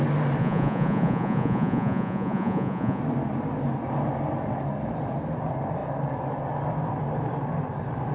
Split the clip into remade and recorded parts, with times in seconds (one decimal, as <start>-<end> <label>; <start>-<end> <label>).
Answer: 0.0-0.4 recorded; 0.4-3.0 remade; 3.0-8.1 recorded